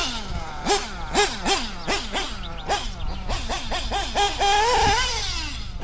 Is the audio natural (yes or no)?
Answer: yes